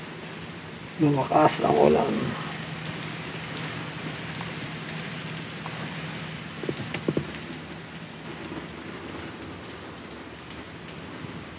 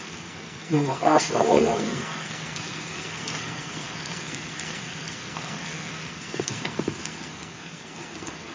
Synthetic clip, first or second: second